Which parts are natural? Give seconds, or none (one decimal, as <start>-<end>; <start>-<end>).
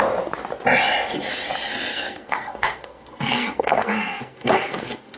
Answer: 0.0-1.9